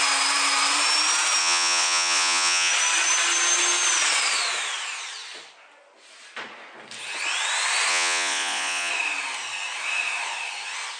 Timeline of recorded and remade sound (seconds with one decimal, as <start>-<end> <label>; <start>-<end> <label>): 0.0-1.4 recorded; 1.4-2.7 remade; 2.7-7.9 recorded; 7.9-8.9 remade; 8.9-11.0 recorded